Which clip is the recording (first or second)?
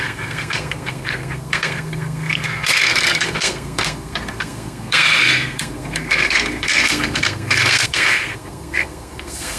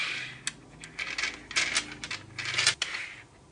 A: second